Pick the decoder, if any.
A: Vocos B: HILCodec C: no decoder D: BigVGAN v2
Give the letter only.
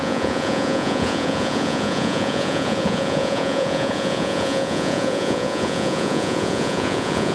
A